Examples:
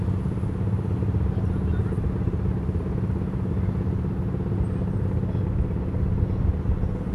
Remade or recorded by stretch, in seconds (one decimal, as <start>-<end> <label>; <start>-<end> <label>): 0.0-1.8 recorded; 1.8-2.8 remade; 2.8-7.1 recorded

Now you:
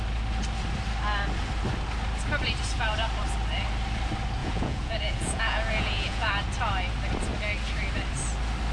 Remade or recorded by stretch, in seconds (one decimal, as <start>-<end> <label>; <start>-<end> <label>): 0.0-4.4 recorded; 4.4-6.3 remade; 6.3-8.7 recorded

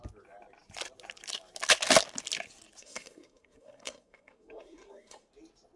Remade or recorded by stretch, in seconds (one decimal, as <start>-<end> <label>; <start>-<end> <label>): 0.0-2.8 recorded; 2.8-5.3 remade; 5.3-5.8 recorded

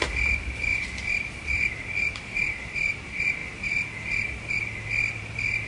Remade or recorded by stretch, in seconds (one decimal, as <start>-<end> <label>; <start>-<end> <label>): 0.0-0.7 recorded; 0.7-2.9 remade; 2.9-5.7 recorded

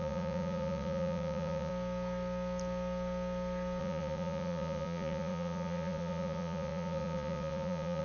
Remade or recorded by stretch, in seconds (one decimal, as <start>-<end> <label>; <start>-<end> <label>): 0.0-1.7 remade; 1.7-3.8 recorded; 3.8-8.0 remade

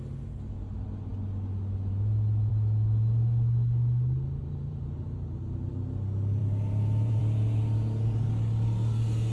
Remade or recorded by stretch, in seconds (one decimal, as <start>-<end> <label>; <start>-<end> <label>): 0.0-4.4 recorded; 4.4-5.7 remade; 5.7-6.4 recorded; 6.4-7.2 remade; 7.2-9.3 recorded